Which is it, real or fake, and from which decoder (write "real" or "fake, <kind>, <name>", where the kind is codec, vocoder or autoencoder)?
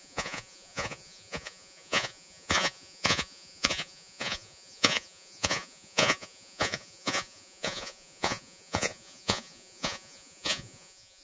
fake, vocoder, Vocos